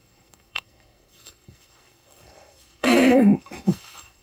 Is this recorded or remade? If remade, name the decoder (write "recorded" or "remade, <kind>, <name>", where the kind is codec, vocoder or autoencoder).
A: remade, codec, SNAC